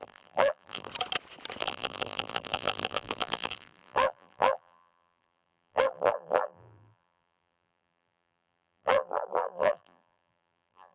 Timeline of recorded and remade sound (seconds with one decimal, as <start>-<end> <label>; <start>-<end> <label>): 0.0-0.9 remade; 0.9-1.6 recorded; 1.6-10.9 remade